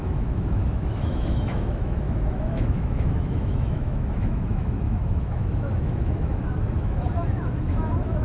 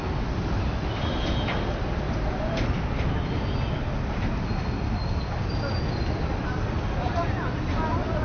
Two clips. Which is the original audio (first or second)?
second